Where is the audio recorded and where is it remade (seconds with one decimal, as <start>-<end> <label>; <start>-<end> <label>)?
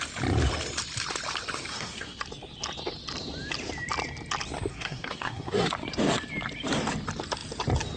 0.0-1.7 recorded; 1.7-2.2 remade; 2.2-4.7 recorded; 4.7-5.7 remade; 5.7-8.0 recorded